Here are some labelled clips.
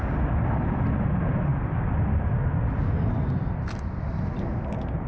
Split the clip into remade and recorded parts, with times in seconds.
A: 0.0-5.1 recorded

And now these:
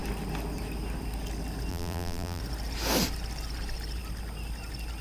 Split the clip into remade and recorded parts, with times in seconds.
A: 0.0-1.7 recorded; 1.7-2.4 remade; 2.4-5.0 recorded

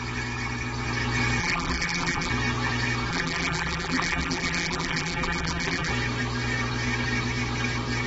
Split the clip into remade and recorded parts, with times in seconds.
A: 0.0-1.4 recorded; 1.4-2.3 remade; 2.3-3.1 recorded; 3.1-5.9 remade; 5.9-8.1 recorded

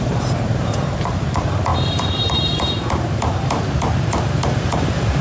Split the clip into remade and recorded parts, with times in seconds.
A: 0.0-5.2 remade